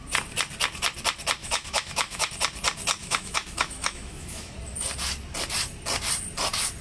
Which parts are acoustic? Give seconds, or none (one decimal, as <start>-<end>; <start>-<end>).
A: 0.0-1.4; 2.3-3.0; 4.5-6.8